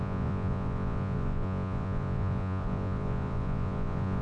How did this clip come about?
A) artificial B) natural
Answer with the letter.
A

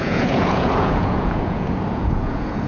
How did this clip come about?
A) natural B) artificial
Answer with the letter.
B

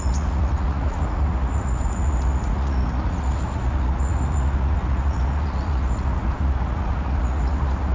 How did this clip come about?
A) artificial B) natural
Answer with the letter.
A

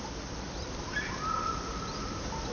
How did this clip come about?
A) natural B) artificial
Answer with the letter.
A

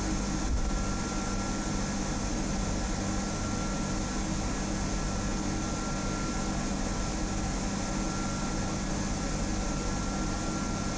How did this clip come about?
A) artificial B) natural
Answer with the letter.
B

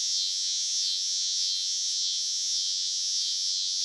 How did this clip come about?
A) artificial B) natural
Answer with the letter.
A